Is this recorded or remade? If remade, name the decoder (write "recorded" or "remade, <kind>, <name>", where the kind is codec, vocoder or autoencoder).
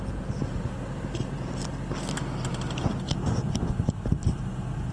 recorded